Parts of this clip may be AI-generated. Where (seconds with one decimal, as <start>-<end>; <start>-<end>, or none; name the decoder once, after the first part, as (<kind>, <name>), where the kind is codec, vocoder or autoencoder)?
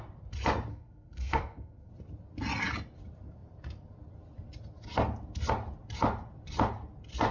0.7-1.9 (codec, SNAC)